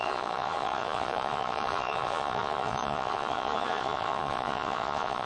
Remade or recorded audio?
remade